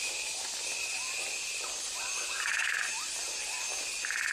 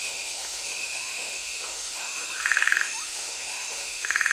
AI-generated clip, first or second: second